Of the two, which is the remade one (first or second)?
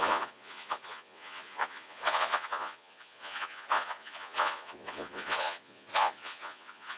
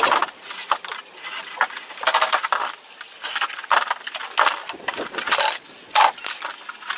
first